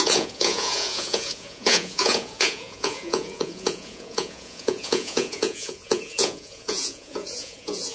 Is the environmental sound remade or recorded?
remade